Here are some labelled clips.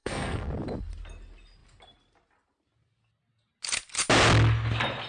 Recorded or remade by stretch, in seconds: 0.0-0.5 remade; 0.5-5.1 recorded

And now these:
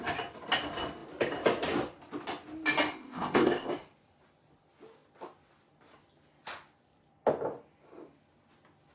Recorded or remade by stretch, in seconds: 0.0-2.9 recorded; 2.9-3.7 remade; 3.7-8.9 recorded

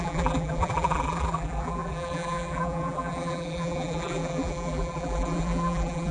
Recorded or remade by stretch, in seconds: 0.0-6.1 remade

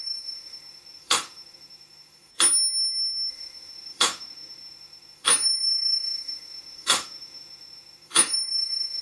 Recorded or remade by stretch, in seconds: 0.0-2.3 remade; 2.3-3.3 recorded; 3.3-9.0 remade

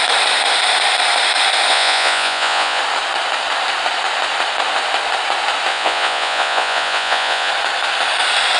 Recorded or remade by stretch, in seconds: 0.0-1.7 recorded; 1.7-2.8 remade; 2.8-5.7 recorded; 5.7-7.5 remade; 7.5-8.6 recorded

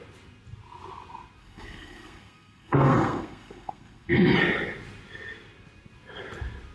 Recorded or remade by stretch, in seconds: 0.0-1.4 recorded; 1.4-4.3 remade; 4.3-6.7 recorded

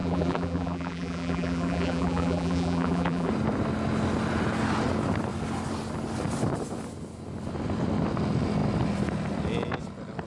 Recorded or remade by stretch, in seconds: 0.0-3.3 remade; 3.3-10.3 recorded

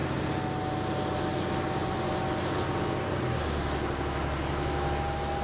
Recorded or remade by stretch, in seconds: 0.0-5.4 recorded